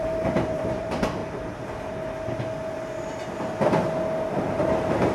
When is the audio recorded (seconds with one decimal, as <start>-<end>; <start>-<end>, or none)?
1.2-4.3